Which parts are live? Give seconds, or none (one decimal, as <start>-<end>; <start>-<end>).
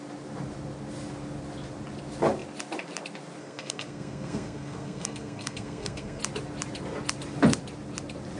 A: 0.0-3.4; 6.2-8.4